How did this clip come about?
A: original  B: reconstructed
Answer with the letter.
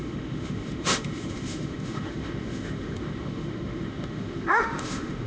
B